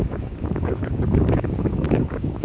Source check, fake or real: fake